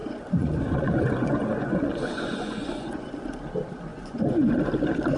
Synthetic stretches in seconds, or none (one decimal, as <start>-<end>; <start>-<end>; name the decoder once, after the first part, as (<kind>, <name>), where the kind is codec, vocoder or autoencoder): 0.0-3.1 (vocoder, Vocos); 3.9-4.5